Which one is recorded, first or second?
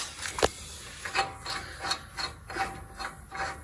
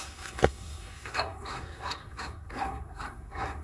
first